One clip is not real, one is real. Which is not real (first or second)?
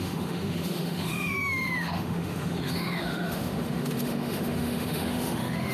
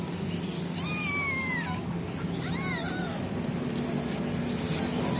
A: first